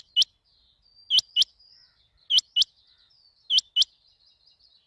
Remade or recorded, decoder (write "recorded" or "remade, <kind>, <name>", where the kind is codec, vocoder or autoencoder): recorded